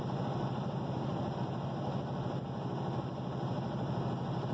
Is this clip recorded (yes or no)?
yes